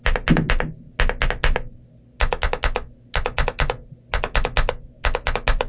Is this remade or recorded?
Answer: recorded